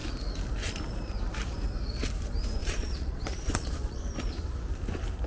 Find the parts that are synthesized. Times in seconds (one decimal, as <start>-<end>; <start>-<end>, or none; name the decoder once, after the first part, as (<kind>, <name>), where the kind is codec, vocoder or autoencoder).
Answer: 2.6-4.0 (vocoder, Vocos)